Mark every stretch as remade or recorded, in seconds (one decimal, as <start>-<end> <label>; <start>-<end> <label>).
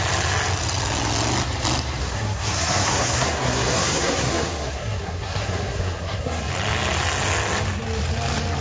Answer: 0.0-2.0 recorded; 2.0-6.5 remade; 6.5-8.6 recorded